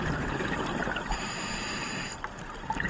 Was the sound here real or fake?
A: real